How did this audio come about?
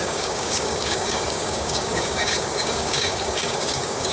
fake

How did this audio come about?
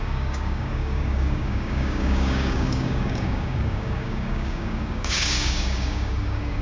fake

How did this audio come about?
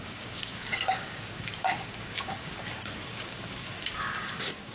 fake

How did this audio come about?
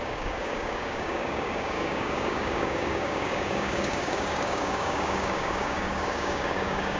fake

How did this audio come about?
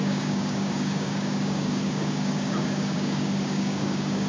fake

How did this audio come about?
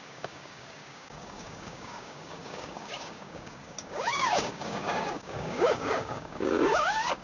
fake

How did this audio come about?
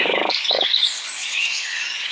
fake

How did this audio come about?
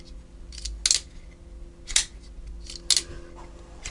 real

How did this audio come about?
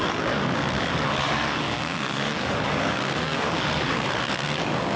fake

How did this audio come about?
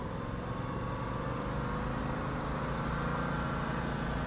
real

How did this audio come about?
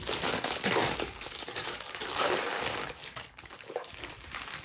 fake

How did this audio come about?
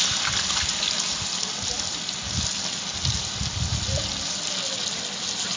real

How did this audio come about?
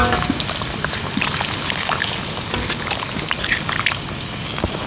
real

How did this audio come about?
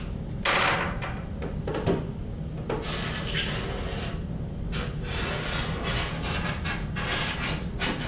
real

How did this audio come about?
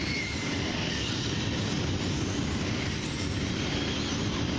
real